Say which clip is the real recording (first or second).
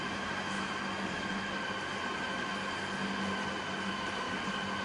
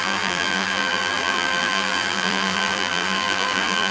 first